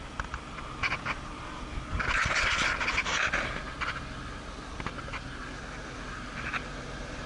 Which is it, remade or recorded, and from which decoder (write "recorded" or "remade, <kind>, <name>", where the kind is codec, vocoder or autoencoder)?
recorded